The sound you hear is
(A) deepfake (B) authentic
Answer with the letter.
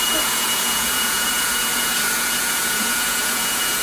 A